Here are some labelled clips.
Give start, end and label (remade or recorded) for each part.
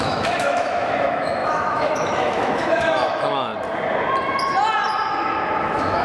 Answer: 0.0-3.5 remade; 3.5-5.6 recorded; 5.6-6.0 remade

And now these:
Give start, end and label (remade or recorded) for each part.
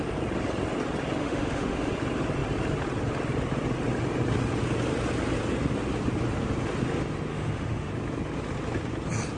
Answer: 0.0-1.2 recorded; 1.2-1.9 remade; 1.9-7.3 recorded; 7.3-7.9 remade; 7.9-9.4 recorded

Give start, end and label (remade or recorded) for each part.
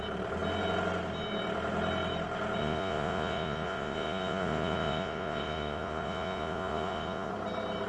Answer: 0.0-2.6 recorded; 2.6-7.3 remade; 7.3-7.9 recorded